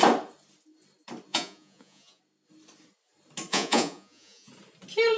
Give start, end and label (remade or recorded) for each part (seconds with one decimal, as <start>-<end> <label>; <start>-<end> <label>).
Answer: 0.0-1.3 recorded; 1.3-2.2 remade; 2.2-3.5 recorded; 3.5-4.5 remade; 4.5-5.2 recorded